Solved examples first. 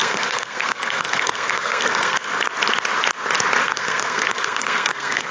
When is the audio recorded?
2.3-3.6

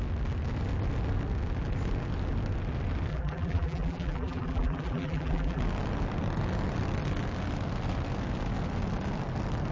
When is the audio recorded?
0.0-3.1; 5.6-9.7

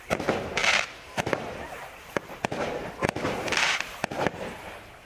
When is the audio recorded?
0.0-0.6; 1.3-5.1

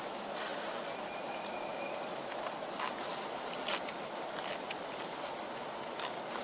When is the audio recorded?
0.0-0.5; 1.1-6.4

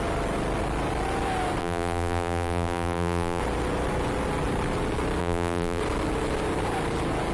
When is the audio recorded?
0.0-1.6; 3.4-5.2; 5.8-7.3

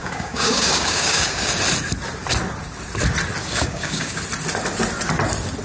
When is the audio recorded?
1.5-3.4; 4.2-5.6